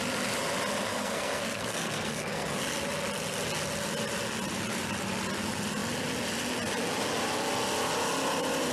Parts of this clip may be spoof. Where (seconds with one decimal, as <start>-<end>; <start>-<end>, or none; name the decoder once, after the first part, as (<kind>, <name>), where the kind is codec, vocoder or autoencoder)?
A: 0.9-2.5 (codec, SNAC)